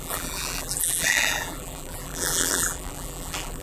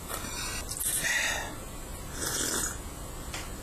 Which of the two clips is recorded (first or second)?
second